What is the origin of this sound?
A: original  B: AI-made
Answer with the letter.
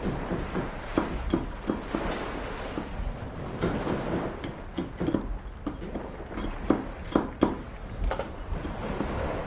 A